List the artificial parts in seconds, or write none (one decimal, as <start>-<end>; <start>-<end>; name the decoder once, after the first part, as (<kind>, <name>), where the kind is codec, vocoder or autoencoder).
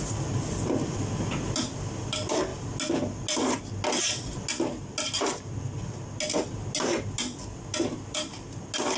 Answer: none